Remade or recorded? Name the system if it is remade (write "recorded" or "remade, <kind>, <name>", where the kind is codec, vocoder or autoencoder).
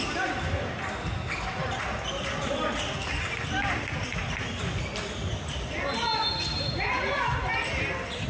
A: recorded